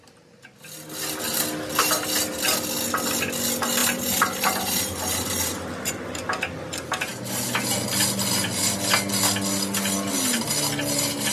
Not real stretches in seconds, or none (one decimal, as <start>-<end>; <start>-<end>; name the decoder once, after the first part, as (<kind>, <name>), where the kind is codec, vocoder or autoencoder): 3.8-5.9 (vocoder, BigVGAN v2)